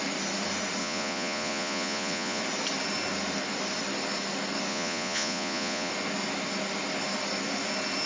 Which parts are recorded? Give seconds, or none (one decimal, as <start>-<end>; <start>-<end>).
0.0-0.8; 2.4-4.7; 5.9-8.1